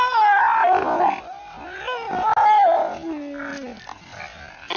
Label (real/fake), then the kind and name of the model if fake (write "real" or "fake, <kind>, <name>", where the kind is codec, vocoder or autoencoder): real